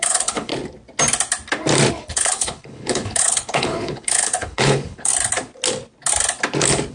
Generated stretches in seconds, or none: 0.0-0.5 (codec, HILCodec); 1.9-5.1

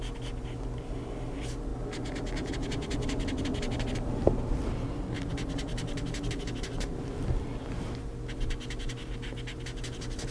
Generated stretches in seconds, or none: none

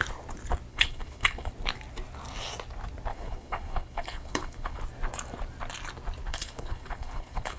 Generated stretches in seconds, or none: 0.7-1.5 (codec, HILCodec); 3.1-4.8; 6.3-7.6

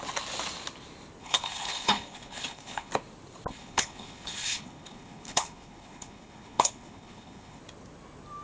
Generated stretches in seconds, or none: 1.2-2.9 (codec, HILCodec); 3.5-7.6

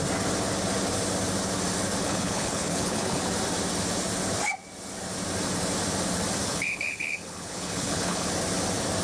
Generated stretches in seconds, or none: 2.0-3.2 (codec, HILCodec); 6.5-8.3

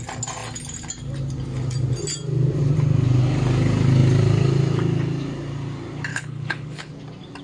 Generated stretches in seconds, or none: 6.1-6.9 (codec, HILCodec)

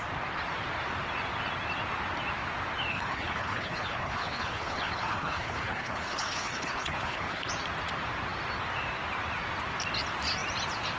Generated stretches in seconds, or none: 2.9-7.5 (codec, HILCodec)

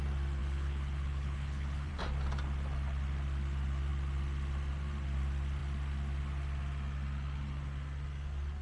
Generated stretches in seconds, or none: 0.4-1.9 (codec, HILCodec)